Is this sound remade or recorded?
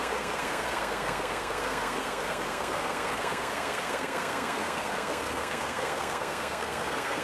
remade